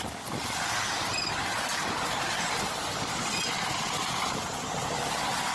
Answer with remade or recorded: recorded